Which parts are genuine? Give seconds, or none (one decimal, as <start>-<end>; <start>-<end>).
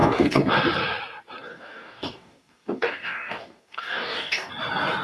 0.5-1.5; 4.5-5.0